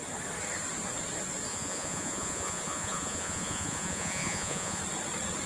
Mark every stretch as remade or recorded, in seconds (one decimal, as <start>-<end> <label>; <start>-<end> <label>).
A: 0.0-1.5 recorded; 1.5-4.8 remade; 4.8-5.5 recorded